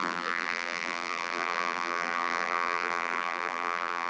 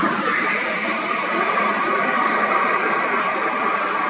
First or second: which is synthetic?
first